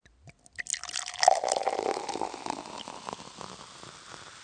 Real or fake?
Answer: real